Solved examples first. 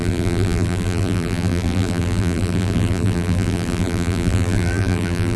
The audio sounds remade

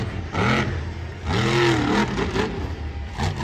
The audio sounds recorded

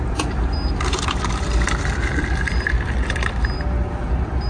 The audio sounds remade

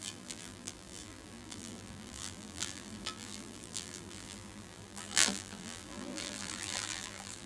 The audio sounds remade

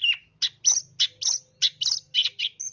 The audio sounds recorded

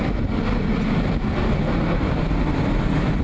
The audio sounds recorded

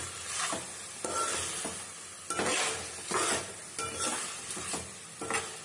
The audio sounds recorded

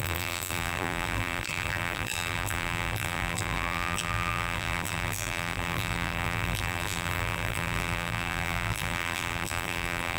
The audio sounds remade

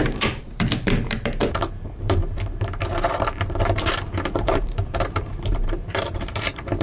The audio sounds remade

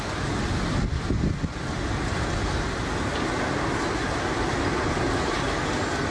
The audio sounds recorded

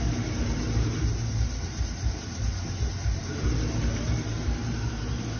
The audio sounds remade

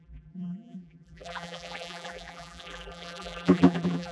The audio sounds remade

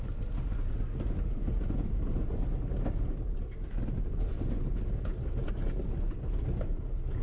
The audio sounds recorded